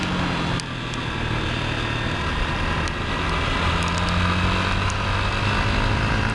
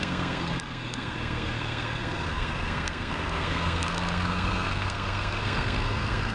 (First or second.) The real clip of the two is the first